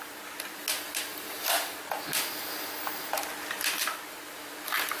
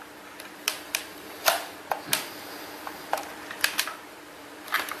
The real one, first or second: first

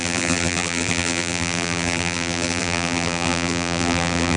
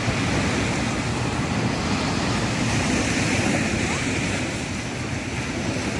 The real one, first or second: second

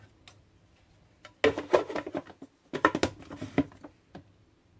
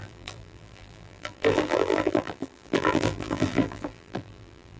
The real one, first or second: first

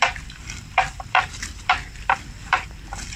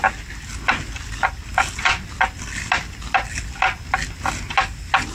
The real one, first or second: second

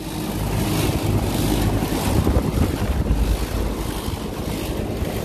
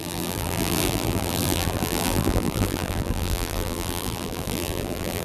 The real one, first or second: first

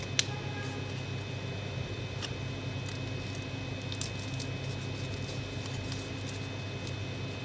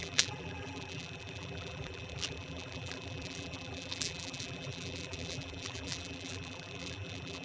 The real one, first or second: first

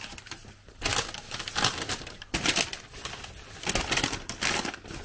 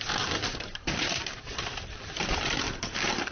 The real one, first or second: first